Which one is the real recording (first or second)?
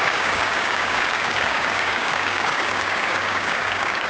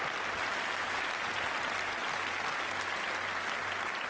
second